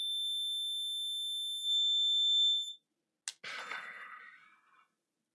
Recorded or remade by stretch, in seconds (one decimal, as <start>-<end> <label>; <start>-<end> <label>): 0.0-3.6 recorded; 3.6-4.2 remade; 4.2-5.3 recorded